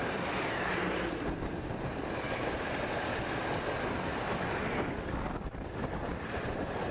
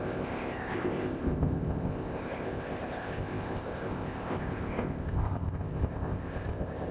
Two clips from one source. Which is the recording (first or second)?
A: first